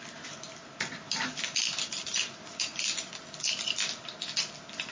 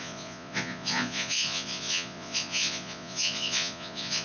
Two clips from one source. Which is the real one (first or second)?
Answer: first